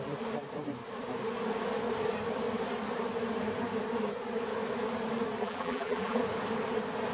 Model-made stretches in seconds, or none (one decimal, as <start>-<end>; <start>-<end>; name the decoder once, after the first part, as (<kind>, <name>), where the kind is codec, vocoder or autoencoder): 5.4-6.2 (vocoder, BigVGAN v2)